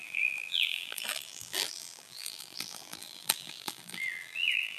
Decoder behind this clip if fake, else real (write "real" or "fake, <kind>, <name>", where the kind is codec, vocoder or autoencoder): fake, vocoder, BigVGAN v2